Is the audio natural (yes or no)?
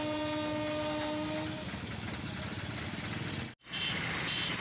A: yes